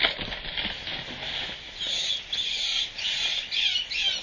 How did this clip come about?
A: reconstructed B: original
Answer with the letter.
B